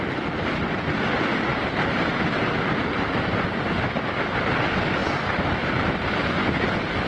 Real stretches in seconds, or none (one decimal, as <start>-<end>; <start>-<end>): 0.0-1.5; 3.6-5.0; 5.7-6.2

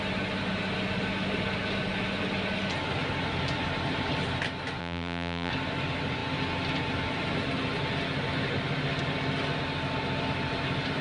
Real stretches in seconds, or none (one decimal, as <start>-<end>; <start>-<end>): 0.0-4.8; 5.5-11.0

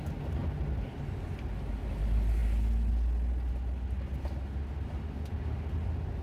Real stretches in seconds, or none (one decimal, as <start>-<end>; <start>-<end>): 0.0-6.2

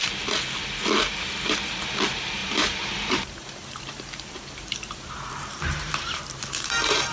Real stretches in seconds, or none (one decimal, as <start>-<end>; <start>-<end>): 0.0-2.4